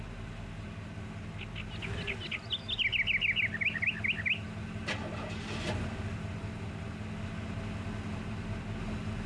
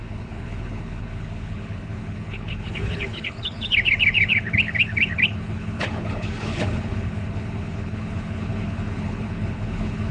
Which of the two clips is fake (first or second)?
second